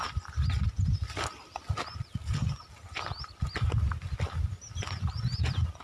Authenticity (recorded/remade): recorded